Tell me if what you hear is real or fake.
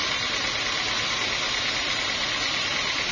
real